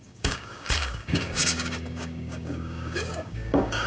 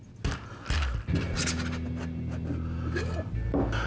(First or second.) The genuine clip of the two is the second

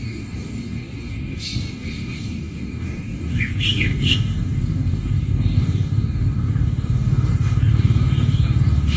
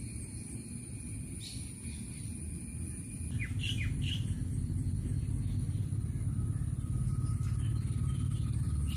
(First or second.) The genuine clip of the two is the second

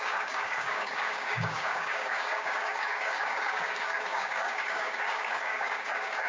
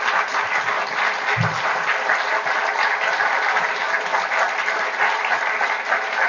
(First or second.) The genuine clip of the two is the second